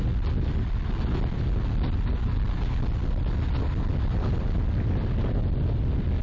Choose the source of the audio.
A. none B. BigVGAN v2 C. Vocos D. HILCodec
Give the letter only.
A